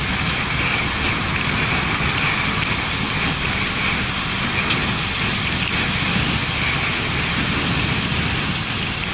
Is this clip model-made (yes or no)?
no